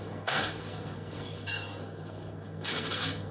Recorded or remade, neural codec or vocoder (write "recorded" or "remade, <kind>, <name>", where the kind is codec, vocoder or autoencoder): remade, codec, SNAC